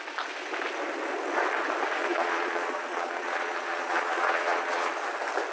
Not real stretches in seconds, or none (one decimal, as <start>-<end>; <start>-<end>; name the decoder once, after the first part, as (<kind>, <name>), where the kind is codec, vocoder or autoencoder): 2.0-4.9 (vocoder, Vocos)